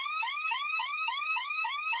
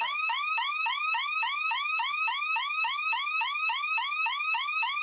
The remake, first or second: first